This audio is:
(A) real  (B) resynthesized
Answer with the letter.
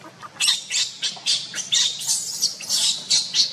A